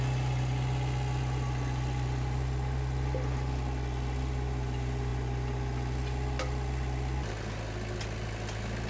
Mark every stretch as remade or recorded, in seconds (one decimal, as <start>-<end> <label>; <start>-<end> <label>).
0.0-8.9 recorded